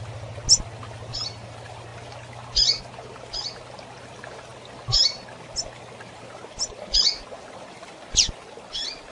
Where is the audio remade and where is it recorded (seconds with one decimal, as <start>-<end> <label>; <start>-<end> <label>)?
0.0-9.1 recorded